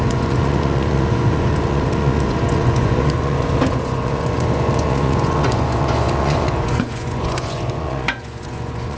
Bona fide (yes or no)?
no